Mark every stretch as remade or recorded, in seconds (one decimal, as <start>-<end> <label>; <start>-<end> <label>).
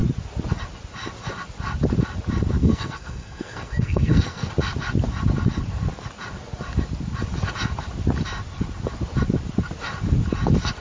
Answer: 0.0-2.6 recorded; 2.6-4.5 remade; 4.5-10.8 recorded